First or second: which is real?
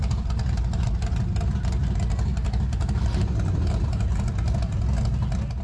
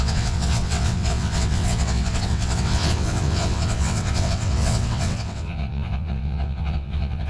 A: first